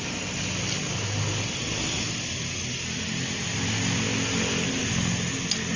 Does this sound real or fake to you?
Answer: real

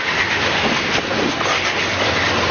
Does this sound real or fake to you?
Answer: real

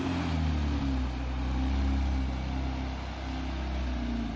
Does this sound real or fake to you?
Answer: real